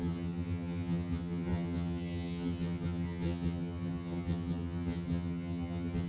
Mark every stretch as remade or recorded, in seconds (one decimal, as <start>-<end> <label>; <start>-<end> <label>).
0.0-6.1 remade